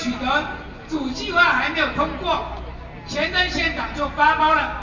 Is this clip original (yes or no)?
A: yes